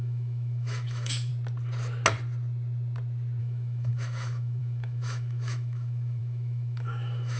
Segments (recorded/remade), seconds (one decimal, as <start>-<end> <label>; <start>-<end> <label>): 0.0-1.3 remade; 1.3-3.4 recorded; 3.4-7.4 remade